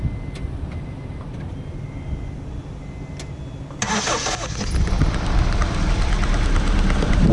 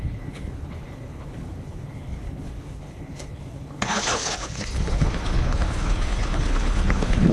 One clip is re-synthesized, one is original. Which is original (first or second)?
first